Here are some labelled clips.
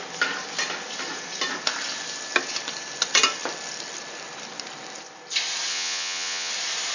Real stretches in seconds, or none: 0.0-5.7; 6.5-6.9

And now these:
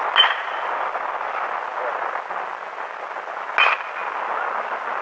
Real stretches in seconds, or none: 0.0-5.0

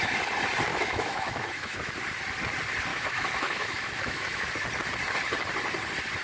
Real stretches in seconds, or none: 0.0-0.7; 1.9-2.9; 4.5-6.2